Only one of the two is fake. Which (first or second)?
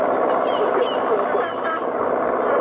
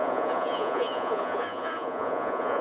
second